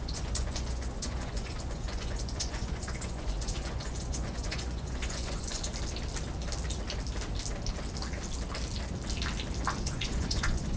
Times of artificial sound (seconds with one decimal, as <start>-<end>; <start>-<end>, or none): 0.0-5.7; 9.8-10.8